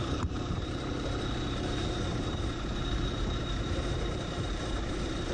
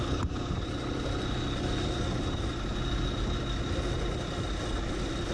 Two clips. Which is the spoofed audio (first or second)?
first